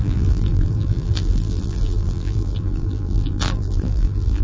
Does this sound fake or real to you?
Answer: fake